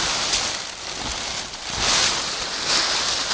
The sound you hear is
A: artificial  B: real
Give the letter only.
B